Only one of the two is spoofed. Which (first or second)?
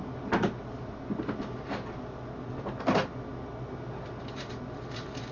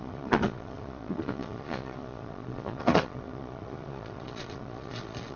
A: second